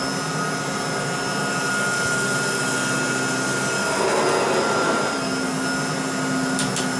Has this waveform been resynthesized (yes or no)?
no